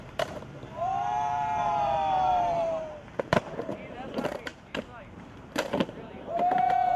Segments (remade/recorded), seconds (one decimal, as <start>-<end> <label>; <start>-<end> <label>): 0.0-4.5 remade; 4.5-5.0 recorded; 5.0-7.0 remade